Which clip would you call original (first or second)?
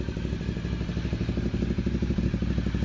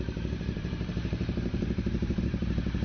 first